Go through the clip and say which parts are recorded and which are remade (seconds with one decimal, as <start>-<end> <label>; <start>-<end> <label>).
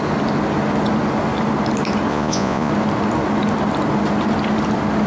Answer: 0.0-2.1 recorded; 2.1-2.7 remade; 2.7-5.1 recorded